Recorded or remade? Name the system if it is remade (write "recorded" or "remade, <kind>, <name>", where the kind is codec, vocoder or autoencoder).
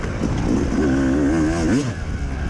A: recorded